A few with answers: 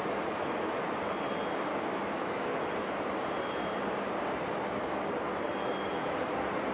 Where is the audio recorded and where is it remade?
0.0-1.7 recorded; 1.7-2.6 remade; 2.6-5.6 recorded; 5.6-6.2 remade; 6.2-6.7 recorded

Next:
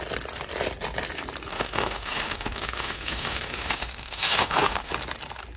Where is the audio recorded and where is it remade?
0.0-1.5 recorded; 1.5-4.9 remade; 4.9-5.6 recorded

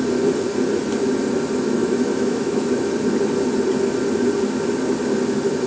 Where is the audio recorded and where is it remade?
0.0-1.8 recorded; 1.8-2.9 remade; 2.9-5.7 recorded

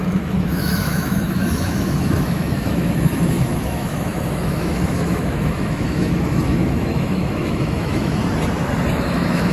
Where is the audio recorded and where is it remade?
0.0-8.2 remade; 8.2-8.9 recorded; 8.9-9.5 remade

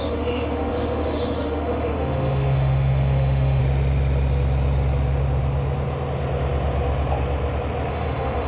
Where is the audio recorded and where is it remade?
0.0-3.6 remade; 3.6-7.9 recorded; 7.9-8.5 remade

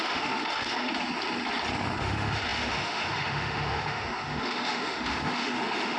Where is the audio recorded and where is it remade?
0.0-0.9 remade; 0.9-2.0 recorded; 2.0-6.0 remade

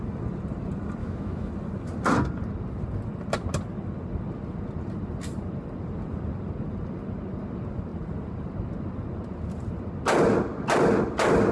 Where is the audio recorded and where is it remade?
0.0-1.0 recorded; 1.0-1.5 remade; 1.5-11.5 recorded

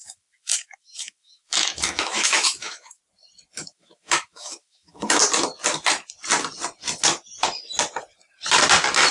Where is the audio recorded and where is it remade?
0.0-3.0 remade; 3.0-3.6 recorded; 3.6-5.2 remade; 5.2-9.1 recorded